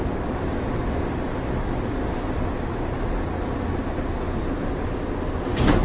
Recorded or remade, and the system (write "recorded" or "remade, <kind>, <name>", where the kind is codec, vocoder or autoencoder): recorded